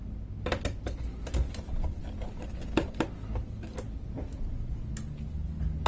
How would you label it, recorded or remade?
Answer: recorded